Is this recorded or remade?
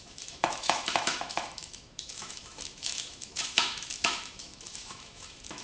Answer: remade